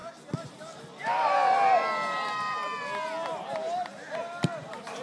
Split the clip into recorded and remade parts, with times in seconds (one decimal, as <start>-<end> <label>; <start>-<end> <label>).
0.0-5.0 recorded